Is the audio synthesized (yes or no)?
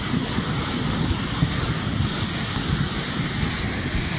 no